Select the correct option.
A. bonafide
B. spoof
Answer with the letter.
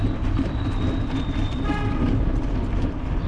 A